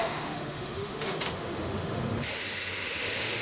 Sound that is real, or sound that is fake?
fake